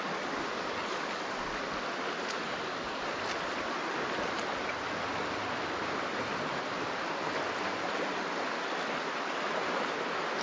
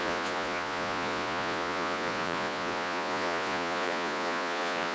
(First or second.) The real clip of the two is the first